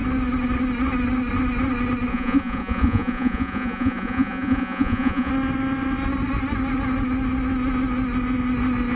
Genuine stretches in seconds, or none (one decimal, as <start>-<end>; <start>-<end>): 0.0-2.1; 5.3-9.0